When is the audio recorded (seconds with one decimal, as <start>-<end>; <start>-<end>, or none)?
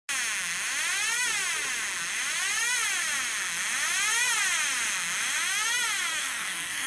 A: 0.0-6.1